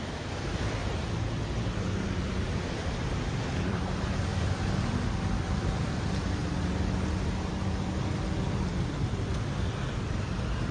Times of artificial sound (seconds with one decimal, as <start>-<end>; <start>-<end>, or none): 0.0-0.8; 2.0-4.3; 4.9-6.4; 7.5-10.7